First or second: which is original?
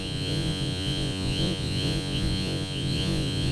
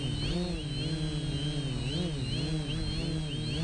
second